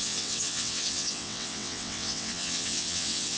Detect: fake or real fake